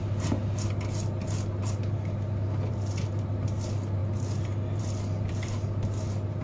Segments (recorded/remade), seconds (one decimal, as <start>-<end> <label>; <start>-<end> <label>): 0.0-4.0 remade; 4.0-4.8 recorded; 4.8-6.4 remade